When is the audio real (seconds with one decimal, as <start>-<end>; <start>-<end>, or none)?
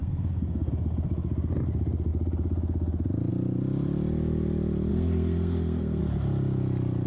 0.7-4.9; 6.0-7.1